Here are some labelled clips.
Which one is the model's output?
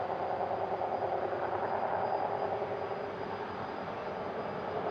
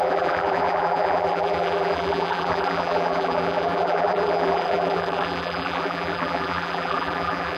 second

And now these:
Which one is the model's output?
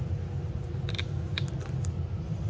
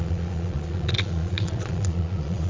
second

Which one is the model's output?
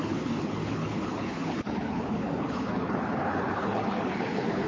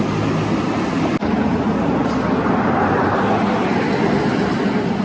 first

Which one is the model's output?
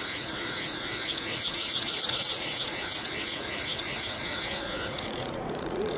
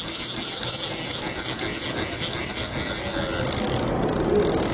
first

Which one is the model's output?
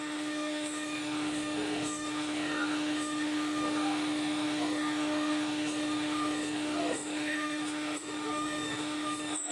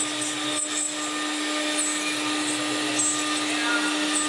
first